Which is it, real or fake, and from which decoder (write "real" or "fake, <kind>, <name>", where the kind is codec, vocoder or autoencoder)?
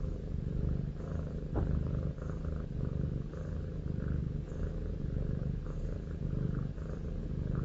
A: fake, vocoder, Vocos